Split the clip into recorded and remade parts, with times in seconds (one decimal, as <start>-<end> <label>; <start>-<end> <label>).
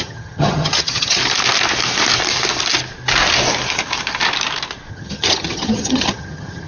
0.0-1.2 remade; 1.2-4.9 recorded; 4.9-6.7 remade